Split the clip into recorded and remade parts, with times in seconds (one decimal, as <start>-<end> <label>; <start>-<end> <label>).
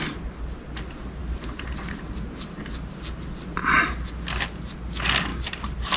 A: 0.0-1.2 recorded; 1.2-2.6 remade; 2.6-5.3 recorded; 5.3-6.0 remade